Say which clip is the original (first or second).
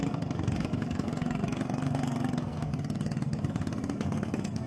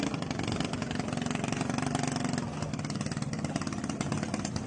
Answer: second